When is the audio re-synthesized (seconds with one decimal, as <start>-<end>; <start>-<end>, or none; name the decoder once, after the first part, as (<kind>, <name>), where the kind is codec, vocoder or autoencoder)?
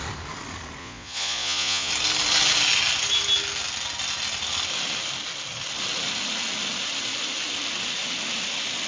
0.8-1.9 (vocoder, Vocos)